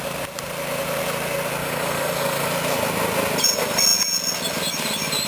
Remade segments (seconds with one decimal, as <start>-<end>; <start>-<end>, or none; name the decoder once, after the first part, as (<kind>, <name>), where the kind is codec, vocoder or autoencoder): 1.6-2.5 (codec, DAC)